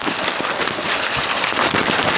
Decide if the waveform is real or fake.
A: real